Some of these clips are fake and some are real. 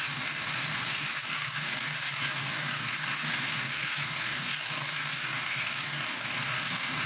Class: fake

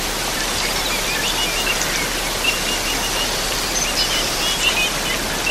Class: real